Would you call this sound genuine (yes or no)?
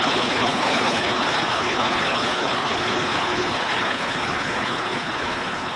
no